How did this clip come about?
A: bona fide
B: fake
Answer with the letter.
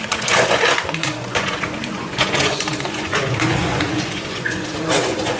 B